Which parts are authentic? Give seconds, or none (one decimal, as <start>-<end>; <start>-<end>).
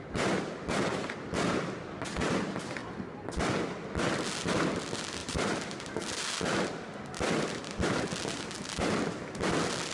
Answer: 0.0-5.2; 5.9-9.9